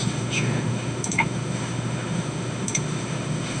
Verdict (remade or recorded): remade